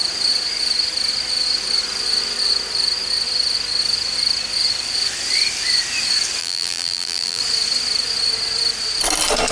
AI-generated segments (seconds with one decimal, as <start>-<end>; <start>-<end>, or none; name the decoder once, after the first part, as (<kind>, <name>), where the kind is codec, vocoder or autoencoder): 6.4-7.4 (vocoder, BigVGAN v2)